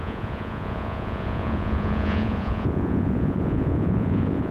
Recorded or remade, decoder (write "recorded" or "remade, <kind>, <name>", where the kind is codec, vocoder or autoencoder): remade, vocoder, Vocos